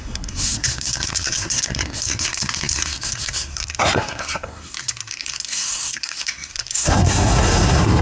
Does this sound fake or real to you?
fake